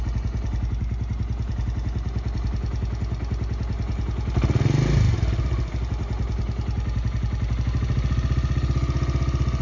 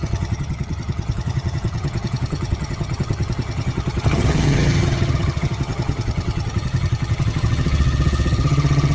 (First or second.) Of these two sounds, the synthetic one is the second